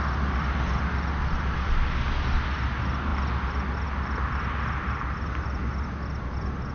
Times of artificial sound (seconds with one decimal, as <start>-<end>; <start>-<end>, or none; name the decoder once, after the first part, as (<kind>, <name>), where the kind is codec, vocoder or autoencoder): none